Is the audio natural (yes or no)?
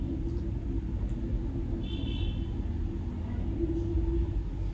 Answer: yes